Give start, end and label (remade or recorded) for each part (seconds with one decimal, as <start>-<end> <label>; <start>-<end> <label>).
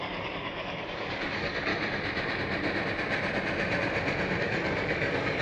0.0-1.7 remade; 1.7-4.4 recorded; 4.4-5.4 remade